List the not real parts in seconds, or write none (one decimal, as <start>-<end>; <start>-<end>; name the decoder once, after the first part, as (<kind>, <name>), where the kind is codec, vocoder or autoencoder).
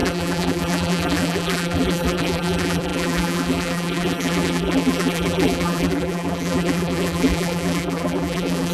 0.0-8.7 (vocoder, BigVGAN v2)